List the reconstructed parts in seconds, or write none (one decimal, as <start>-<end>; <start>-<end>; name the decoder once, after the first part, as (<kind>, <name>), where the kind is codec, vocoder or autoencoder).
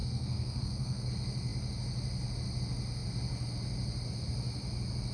0.0-1.1 (codec, SNAC)